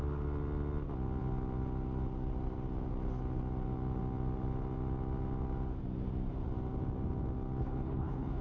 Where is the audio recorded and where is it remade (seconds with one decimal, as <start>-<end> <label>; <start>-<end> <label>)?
0.0-7.6 recorded; 7.6-8.4 remade